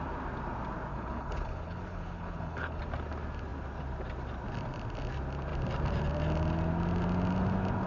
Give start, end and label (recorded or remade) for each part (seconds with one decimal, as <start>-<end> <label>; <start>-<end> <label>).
0.0-0.9 recorded; 0.9-2.8 remade; 2.8-7.9 recorded